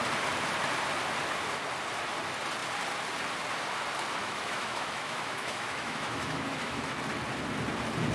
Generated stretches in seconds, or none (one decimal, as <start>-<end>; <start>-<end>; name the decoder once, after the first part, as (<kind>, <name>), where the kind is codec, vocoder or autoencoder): 4.2-6.9 (autoencoder, DAC-VAE)